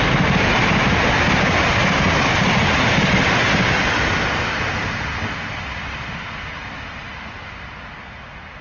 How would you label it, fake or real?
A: real